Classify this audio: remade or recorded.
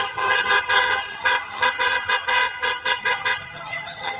remade